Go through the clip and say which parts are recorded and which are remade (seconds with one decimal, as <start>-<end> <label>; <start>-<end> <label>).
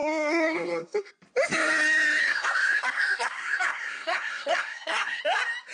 0.0-1.1 remade; 1.1-2.2 recorded; 2.2-5.2 remade; 5.2-5.7 recorded